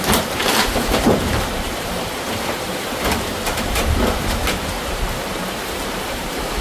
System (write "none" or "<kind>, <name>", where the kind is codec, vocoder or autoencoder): vocoder, BigVGAN v2